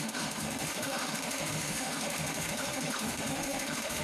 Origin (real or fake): fake